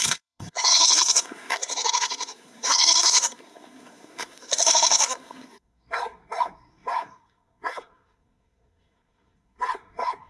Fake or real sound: fake